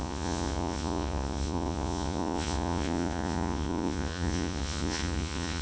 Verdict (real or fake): fake